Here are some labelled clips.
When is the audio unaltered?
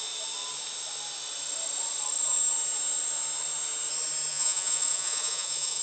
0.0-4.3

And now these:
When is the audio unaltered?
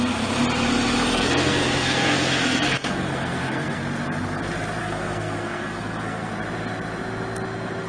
0.0-1.1; 3.8-4.8; 6.3-7.9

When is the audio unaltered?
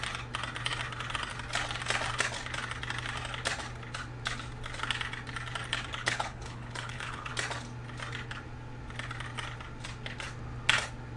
0.0-6.0; 7.3-11.2